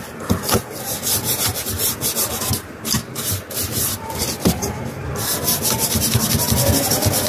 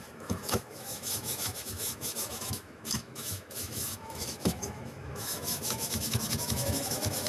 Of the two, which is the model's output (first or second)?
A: second